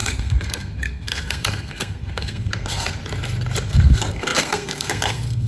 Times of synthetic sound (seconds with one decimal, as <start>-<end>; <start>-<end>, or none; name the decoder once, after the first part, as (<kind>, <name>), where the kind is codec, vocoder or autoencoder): 0.0-3.0 (codec, SNAC); 3.6-5.5

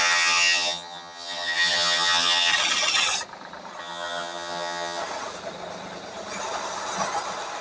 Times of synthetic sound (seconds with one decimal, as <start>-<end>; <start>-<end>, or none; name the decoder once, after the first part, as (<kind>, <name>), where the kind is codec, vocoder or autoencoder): 0.0-2.5 (vocoder, HiFi-GAN); 3.8-5.0

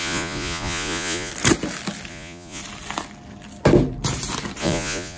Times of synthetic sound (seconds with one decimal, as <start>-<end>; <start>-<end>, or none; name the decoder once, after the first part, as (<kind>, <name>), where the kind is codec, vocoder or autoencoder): 0.0-1.3 (vocoder, Vocos); 2.1-2.6; 4.6-5.2

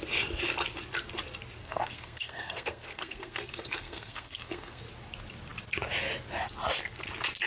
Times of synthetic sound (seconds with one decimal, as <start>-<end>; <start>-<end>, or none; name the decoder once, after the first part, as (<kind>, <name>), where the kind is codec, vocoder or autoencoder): 1.6-4.8 (codec, SNAC)

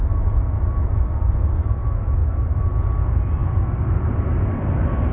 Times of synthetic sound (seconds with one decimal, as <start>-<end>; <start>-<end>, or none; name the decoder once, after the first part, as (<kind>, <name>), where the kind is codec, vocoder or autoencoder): none

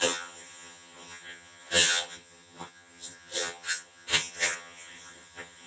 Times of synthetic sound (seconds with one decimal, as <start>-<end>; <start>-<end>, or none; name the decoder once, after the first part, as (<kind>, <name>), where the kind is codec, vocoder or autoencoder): 0.0-5.7 (vocoder, HiFi-GAN)